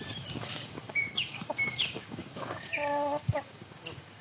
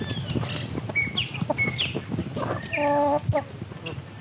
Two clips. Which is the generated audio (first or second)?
first